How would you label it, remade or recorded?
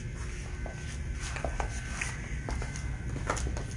recorded